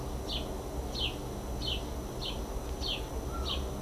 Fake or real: real